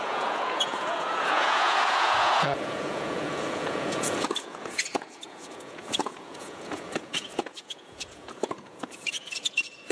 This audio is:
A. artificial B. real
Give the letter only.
A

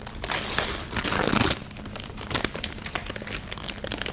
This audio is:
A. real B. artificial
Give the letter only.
A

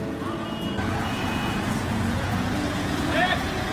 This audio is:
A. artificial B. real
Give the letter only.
A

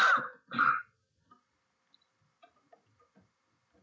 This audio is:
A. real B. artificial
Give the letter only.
A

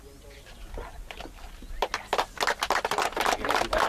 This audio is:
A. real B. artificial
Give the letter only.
A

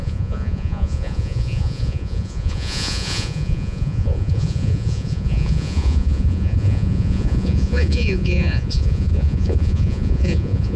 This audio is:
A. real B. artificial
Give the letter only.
B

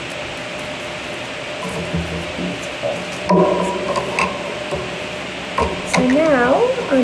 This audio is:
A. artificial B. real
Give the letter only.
B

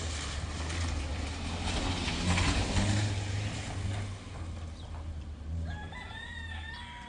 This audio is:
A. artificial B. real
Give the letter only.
B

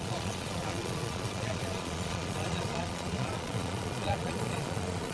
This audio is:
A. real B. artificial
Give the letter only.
B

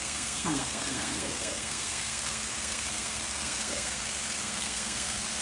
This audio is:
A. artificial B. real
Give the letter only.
A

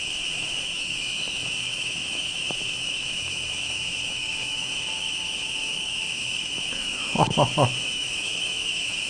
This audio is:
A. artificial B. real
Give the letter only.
A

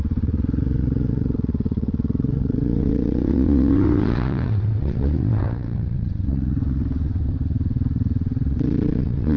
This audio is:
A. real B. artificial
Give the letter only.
B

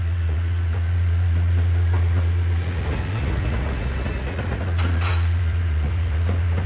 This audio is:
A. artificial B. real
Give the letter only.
A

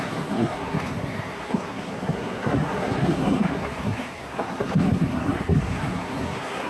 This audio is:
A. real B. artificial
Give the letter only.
B